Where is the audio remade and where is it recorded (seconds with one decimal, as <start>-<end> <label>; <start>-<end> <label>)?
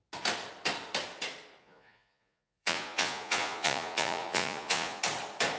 0.0-1.6 recorded; 1.6-5.0 remade; 5.0-5.6 recorded